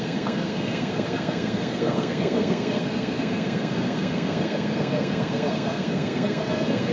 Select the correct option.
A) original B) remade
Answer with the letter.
B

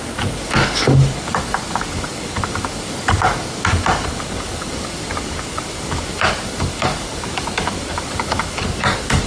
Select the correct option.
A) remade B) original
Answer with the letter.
A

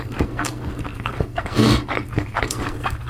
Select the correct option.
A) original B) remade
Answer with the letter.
B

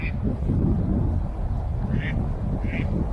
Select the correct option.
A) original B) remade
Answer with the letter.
A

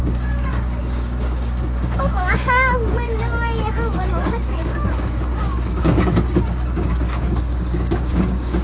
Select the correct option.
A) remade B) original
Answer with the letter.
A